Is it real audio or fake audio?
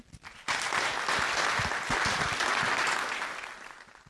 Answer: real